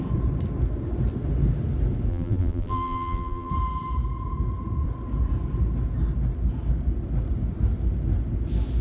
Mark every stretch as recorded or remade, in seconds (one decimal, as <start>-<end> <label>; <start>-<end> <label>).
0.0-2.1 recorded; 2.1-3.5 remade; 3.5-8.8 recorded